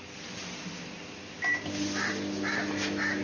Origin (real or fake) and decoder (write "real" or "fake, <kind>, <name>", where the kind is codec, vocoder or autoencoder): real